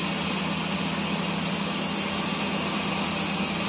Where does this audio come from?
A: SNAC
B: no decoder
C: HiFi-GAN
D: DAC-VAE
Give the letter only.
B